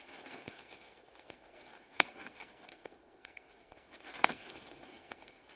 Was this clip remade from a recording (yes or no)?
yes